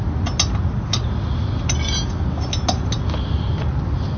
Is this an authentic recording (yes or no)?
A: yes